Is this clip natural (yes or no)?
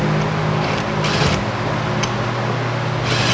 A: yes